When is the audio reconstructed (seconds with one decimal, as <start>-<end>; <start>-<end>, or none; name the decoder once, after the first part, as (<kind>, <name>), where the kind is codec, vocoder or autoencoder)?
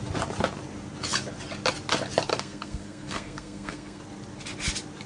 2.3-4.0 (codec, SNAC)